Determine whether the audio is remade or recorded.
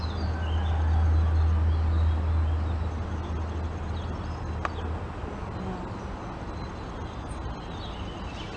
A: recorded